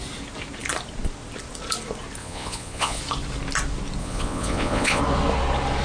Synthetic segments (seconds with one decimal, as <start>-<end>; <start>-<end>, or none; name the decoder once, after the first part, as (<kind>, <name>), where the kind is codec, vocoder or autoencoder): 2.2-3.0 (vocoder, Vocos); 4.0-5.0